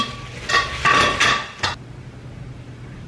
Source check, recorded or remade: recorded